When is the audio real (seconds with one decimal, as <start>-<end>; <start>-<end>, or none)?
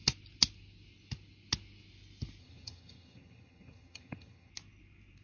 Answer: 0.0-2.4; 4.5-5.2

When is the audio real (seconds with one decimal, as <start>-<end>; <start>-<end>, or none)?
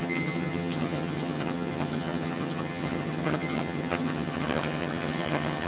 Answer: none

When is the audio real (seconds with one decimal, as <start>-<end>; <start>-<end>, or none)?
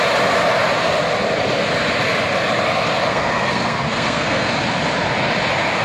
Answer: 0.0-3.1; 4.5-5.8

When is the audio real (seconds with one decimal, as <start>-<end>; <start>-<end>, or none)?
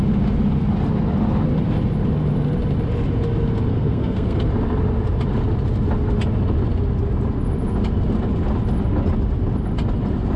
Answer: 0.0-3.7; 4.5-10.4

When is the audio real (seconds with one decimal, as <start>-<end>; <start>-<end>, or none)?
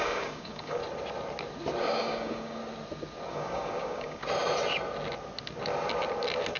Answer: 0.8-1.8; 2.6-3.3; 4.2-6.6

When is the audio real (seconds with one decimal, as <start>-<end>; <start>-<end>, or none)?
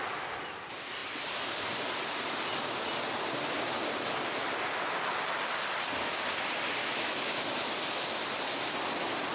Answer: 0.0-6.8; 7.4-9.3